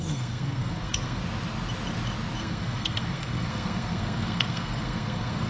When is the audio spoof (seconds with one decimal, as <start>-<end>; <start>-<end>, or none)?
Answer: 0.0-1.2; 2.4-5.5